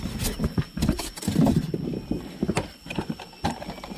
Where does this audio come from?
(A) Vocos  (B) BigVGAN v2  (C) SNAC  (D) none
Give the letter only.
D